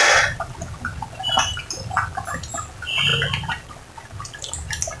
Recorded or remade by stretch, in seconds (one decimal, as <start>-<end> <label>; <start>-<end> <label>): 0.0-5.0 recorded

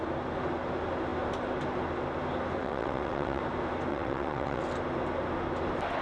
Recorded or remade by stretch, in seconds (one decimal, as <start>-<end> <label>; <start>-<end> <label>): 0.0-2.6 recorded; 2.6-3.4 remade; 3.4-3.9 recorded; 3.9-4.6 remade; 4.6-6.0 recorded

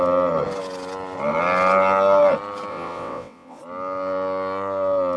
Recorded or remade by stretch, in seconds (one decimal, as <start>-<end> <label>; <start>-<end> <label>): 0.0-2.7 recorded; 2.7-3.6 remade; 3.6-5.2 recorded

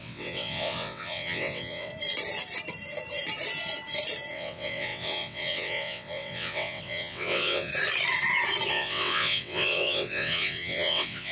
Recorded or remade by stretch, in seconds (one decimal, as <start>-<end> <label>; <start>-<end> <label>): 0.0-1.9 remade; 1.9-4.3 recorded; 4.3-7.7 remade; 7.7-8.7 recorded; 8.7-11.3 remade

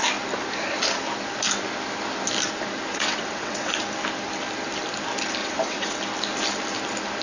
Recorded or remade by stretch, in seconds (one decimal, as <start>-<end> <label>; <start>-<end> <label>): 0.0-2.9 recorded; 2.9-3.7 remade; 3.7-5.4 recorded; 5.4-6.0 remade; 6.0-7.2 recorded

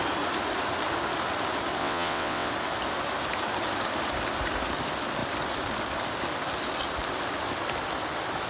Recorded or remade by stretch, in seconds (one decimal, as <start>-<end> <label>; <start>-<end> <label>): 0.0-1.8 recorded; 1.8-2.5 remade; 2.5-8.5 recorded